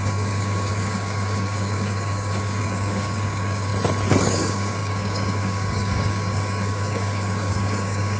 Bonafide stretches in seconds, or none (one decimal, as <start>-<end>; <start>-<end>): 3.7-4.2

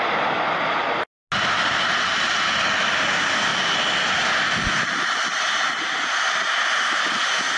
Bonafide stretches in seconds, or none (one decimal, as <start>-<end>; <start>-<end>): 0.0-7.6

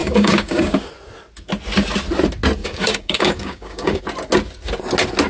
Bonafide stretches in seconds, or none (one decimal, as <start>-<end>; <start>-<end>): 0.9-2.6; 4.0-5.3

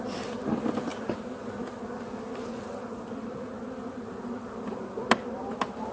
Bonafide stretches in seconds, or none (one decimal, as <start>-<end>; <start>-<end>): 0.0-5.9